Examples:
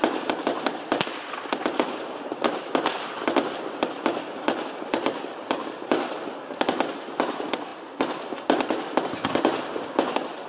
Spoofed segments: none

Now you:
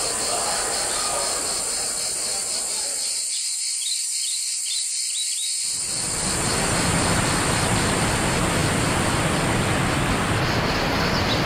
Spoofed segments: none

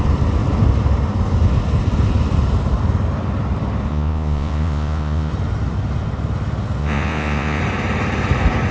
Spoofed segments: 3.9-5.3; 6.8-7.6

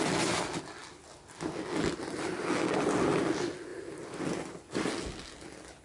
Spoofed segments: none

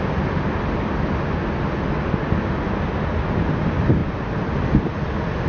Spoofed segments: none

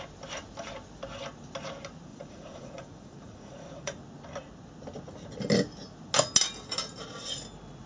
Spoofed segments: 2.1-4.0

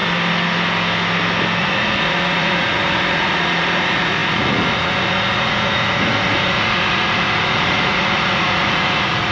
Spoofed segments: 1.6-9.3